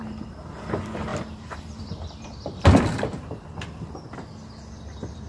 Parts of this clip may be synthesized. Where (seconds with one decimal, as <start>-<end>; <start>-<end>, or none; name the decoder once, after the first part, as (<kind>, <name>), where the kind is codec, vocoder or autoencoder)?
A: 0.0-5.3 (vocoder, BigVGAN v2)